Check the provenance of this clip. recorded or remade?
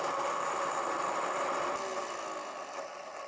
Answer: recorded